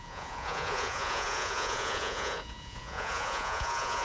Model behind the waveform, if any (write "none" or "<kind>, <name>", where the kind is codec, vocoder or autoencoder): vocoder, Vocos